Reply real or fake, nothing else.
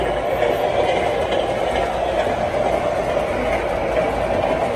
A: real